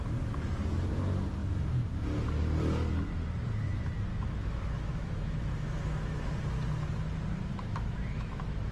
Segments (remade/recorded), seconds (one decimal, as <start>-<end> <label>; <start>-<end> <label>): 0.0-4.1 recorded; 4.1-6.3 remade; 6.3-7.5 recorded; 7.5-8.7 remade